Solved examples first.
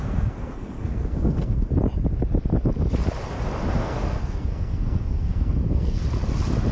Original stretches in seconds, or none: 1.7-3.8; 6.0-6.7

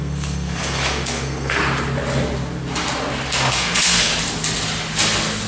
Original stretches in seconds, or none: 1.6-3.5; 4.1-5.5

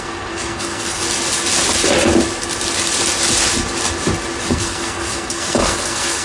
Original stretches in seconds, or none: 1.0-4.5

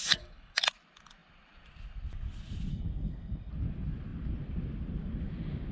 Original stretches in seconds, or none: 0.0-2.7; 3.5-5.7

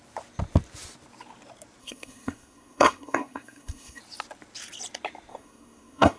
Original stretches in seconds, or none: 0.0-1.8; 4.0-5.3